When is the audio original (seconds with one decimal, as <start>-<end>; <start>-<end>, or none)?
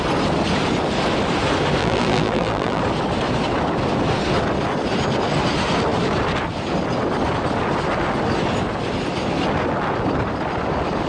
0.0-1.8; 2.8-11.1